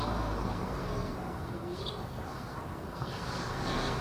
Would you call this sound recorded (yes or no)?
no